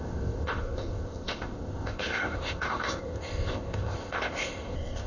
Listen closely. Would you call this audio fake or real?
fake